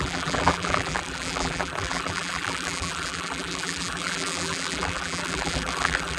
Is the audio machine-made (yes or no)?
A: yes